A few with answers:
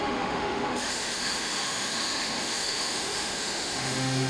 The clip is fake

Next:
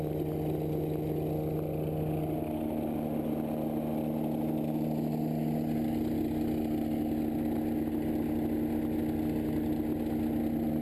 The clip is real